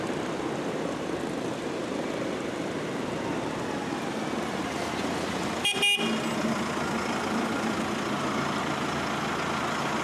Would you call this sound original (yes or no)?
yes